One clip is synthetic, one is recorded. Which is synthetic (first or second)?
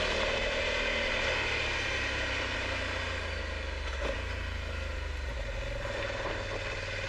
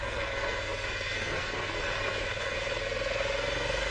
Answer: second